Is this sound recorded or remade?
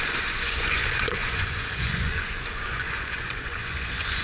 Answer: remade